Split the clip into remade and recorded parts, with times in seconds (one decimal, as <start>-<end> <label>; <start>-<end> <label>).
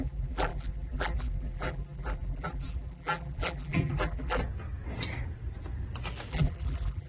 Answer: 0.0-4.4 remade; 4.4-6.3 recorded; 6.3-7.1 remade